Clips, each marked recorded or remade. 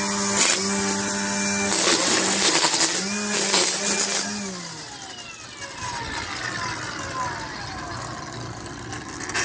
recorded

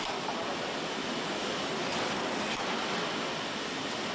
recorded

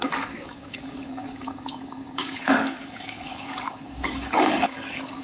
remade